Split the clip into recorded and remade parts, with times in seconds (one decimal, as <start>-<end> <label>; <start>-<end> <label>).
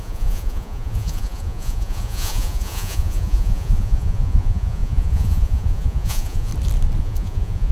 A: 0.0-6.5 remade; 6.5-7.0 recorded; 7.0-7.7 remade